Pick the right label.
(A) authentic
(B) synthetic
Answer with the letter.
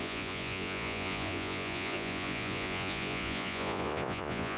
B